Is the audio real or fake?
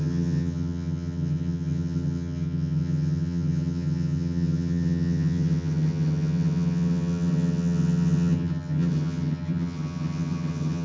fake